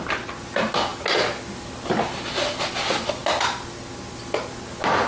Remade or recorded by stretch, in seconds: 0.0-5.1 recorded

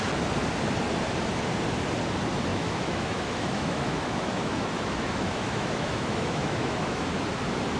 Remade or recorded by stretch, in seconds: 0.0-2.5 recorded; 2.5-7.1 remade; 7.1-7.8 recorded

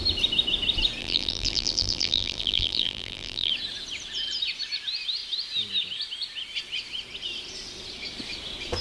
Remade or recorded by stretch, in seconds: 0.0-1.0 recorded; 1.0-3.5 remade; 3.5-8.8 recorded

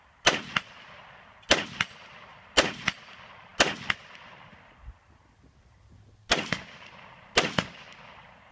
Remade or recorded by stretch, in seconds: 0.0-8.5 recorded

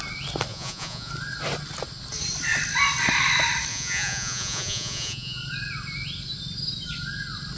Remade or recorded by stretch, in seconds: 0.0-0.5 recorded; 0.5-1.1 remade; 1.1-3.7 recorded; 3.7-5.4 remade; 5.4-7.6 recorded

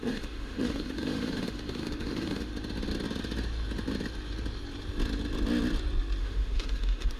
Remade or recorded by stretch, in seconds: 0.0-2.5 remade; 2.5-6.2 recorded; 6.2-7.2 remade